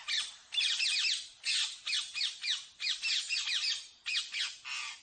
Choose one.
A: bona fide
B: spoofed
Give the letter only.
A